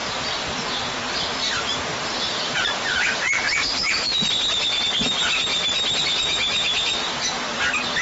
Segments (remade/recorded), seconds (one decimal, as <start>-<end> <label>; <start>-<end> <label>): 0.0-4.3 remade; 4.3-8.0 recorded